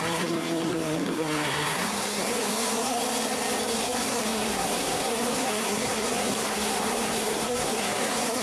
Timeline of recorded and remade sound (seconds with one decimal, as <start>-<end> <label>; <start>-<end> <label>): 0.0-3.0 remade; 3.0-3.7 recorded; 3.7-8.4 remade